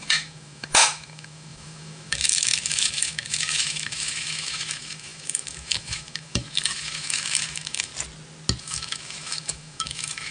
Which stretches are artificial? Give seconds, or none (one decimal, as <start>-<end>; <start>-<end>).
0.0-7.9; 8.6-10.3

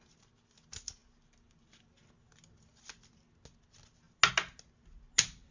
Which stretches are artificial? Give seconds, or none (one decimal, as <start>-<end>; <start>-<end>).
none

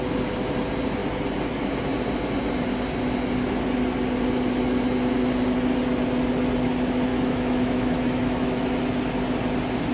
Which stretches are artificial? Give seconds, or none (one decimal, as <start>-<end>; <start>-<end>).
7.1-8.8

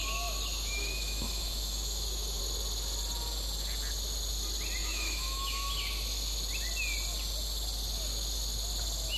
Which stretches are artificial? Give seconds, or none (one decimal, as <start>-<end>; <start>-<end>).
0.0-2.4; 4.8-5.7

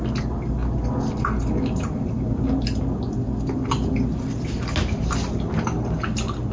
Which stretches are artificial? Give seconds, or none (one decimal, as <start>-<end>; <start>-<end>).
none

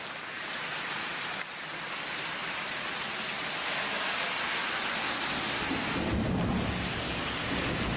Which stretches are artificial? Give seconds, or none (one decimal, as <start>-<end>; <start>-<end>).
none